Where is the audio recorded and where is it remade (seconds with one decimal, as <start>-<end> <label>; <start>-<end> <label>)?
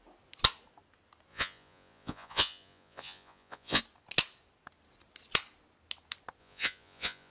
0.0-1.3 recorded; 1.3-3.8 remade; 3.8-6.4 recorded; 6.4-7.3 remade